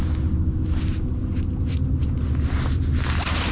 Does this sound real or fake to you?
real